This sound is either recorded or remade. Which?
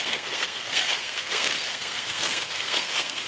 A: remade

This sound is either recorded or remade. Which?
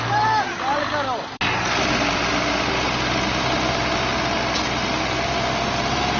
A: recorded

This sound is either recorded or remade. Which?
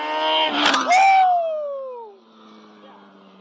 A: recorded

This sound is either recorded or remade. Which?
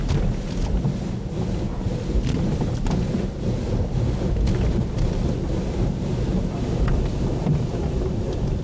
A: recorded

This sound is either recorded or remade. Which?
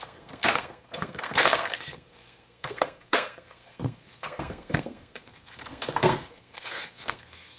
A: remade